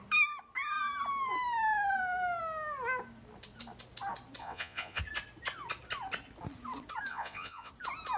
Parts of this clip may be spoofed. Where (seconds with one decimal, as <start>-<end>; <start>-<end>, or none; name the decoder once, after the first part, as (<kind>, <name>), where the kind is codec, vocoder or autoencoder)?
4.4-5.0 (vocoder, Vocos); 7.1-7.7